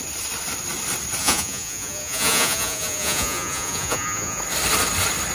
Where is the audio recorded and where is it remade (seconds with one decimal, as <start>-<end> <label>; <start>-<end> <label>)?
0.0-1.2 recorded; 1.2-4.4 remade; 4.4-5.3 recorded